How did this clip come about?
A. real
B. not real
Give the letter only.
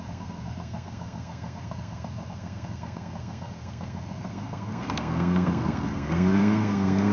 B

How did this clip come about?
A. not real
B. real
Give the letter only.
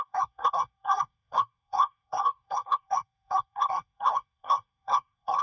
A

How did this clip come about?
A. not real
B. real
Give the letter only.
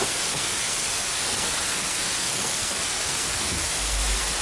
A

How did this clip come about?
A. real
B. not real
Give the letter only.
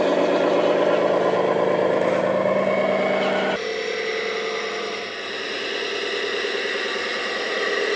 A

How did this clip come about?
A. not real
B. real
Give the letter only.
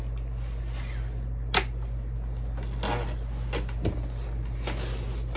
B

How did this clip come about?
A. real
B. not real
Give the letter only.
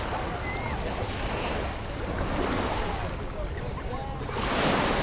A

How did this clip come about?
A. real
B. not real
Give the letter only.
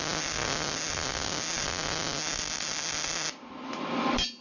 A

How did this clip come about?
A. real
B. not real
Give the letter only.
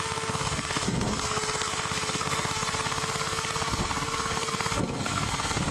B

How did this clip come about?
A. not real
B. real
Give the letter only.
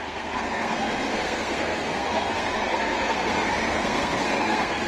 A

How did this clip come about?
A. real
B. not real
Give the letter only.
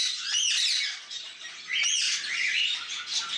A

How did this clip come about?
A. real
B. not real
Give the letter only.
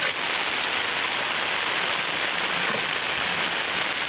A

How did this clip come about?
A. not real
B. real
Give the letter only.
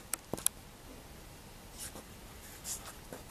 B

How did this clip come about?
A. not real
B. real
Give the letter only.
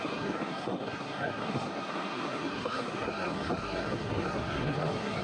A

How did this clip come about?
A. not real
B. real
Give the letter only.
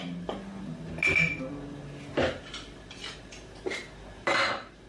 B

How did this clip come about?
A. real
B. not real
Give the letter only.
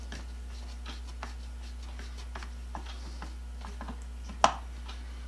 A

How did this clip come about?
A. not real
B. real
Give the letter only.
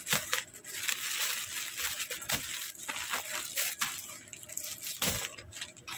B